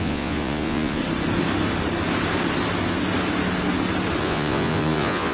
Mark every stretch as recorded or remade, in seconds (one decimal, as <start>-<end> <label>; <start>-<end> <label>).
0.0-1.0 remade; 1.0-4.2 recorded; 4.2-5.3 remade

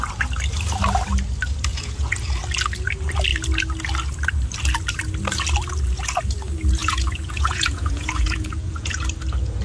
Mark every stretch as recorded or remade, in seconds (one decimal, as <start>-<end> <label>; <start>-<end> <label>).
0.0-1.7 recorded; 1.7-2.2 remade; 2.2-6.8 recorded; 6.8-8.9 remade; 8.9-9.6 recorded